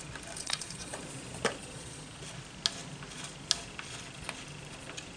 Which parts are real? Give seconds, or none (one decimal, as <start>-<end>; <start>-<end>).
0.0-0.4; 1.0-1.6; 2.2-5.2